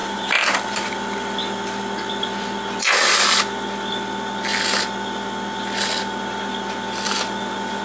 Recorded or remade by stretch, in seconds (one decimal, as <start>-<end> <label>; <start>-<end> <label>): 0.0-0.9 remade; 0.9-7.8 recorded